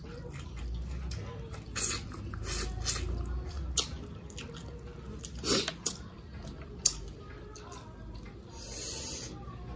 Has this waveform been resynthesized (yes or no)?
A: no